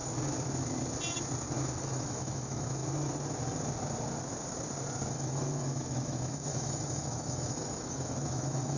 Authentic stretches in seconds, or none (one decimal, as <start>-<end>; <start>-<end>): 0.0-1.8; 2.8-5.1